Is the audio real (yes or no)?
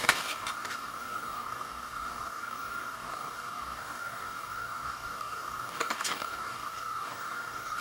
no